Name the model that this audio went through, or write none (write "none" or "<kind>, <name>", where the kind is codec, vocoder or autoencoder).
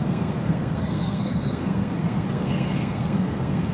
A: codec, SNAC